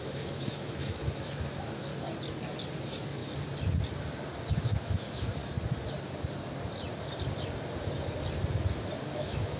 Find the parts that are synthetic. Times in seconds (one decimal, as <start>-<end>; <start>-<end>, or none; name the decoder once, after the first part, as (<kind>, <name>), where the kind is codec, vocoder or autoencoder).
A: 0.0-1.9 (autoencoder, DAC-VAE); 2.8-3.2; 4.5-5.4; 9.0-9.6